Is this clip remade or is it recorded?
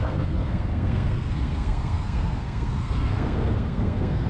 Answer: remade